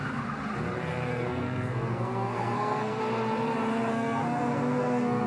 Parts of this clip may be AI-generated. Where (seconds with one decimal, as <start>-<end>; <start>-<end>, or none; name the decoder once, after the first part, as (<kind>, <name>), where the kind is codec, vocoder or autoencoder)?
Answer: 1.3-3.0 (codec, SNAC); 3.9-5.3